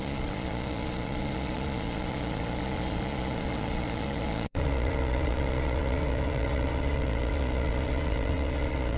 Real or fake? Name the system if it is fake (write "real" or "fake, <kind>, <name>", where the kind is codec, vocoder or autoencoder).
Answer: fake, vocoder, Vocos